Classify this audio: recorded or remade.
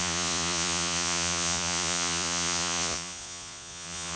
remade